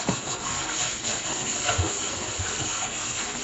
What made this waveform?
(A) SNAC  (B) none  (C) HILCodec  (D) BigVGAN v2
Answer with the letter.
A